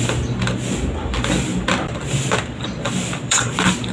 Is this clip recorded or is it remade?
remade